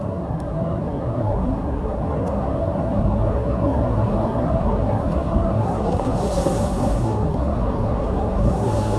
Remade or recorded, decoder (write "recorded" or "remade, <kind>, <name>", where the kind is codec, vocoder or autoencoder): remade, codec, SNAC